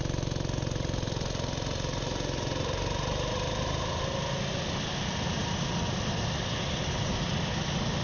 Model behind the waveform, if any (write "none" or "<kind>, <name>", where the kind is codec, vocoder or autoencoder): none